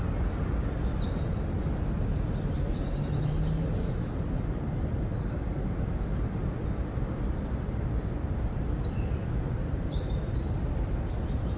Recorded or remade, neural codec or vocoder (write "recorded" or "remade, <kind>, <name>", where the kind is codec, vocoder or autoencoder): recorded